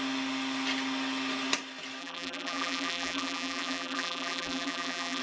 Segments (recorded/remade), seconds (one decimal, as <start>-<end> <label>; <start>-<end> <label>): 0.0-2.0 recorded; 2.0-5.2 remade